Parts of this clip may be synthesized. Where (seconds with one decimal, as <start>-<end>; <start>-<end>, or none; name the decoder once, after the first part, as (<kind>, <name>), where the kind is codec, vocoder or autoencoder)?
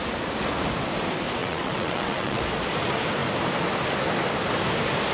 1.4-2.4 (vocoder, WaveNeXt)